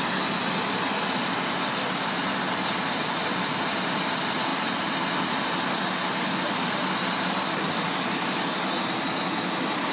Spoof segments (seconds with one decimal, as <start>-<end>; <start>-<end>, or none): none